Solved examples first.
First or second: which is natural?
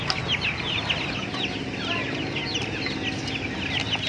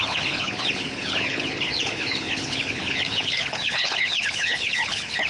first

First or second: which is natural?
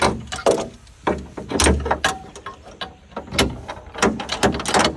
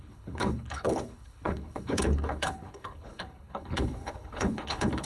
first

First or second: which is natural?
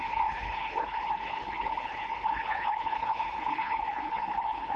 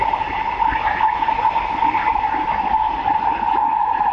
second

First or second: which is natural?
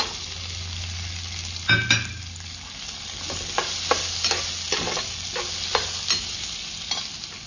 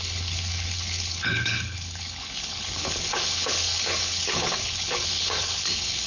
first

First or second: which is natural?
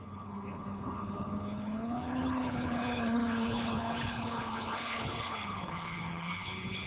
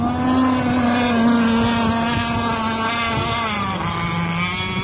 second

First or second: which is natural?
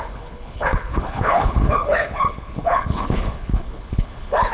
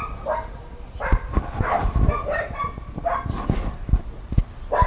second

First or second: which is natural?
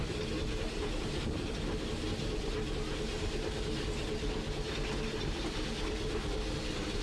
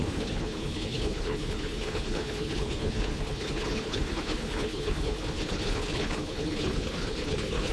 first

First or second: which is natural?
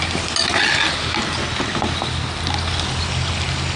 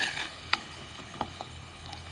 first